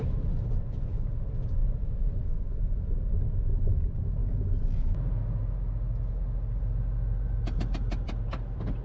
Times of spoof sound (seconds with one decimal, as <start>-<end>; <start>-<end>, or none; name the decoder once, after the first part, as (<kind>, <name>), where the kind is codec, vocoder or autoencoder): none